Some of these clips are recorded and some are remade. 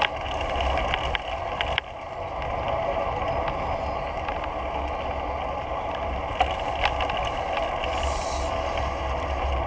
recorded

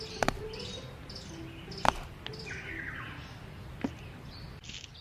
recorded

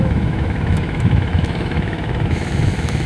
remade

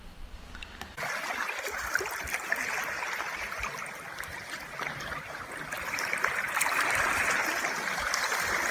recorded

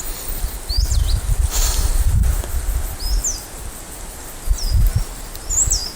recorded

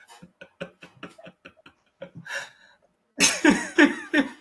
recorded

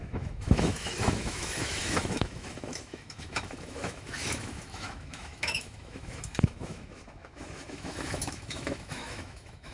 remade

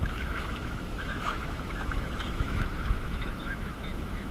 remade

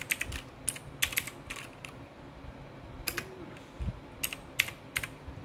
recorded